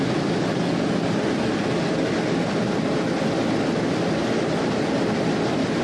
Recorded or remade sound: recorded